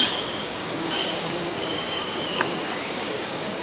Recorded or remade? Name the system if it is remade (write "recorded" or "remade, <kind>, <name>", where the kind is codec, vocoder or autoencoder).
remade, codec, DAC